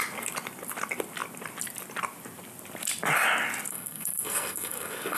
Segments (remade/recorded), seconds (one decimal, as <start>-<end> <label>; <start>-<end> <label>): 0.0-3.7 recorded; 3.7-5.2 remade